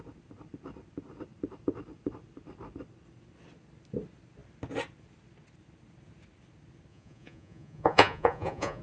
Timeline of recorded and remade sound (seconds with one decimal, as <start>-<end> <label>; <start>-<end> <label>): 0.0-6.9 recorded; 6.9-8.8 remade